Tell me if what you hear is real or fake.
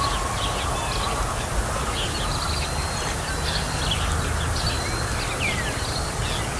real